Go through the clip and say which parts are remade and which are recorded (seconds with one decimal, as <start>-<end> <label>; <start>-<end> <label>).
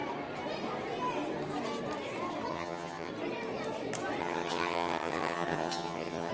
0.0-2.5 recorded; 2.5-3.1 remade; 3.1-4.2 recorded; 4.2-6.3 remade